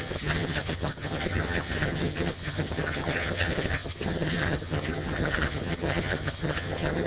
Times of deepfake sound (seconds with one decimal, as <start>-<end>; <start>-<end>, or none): 0.0-7.1